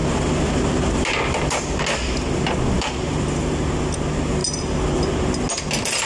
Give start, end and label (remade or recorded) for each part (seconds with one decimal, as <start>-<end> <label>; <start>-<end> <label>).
0.0-6.1 recorded